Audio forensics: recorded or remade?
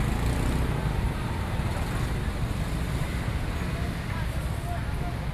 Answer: recorded